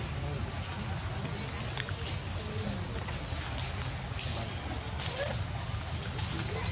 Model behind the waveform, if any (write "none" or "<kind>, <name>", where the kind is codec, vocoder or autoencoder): none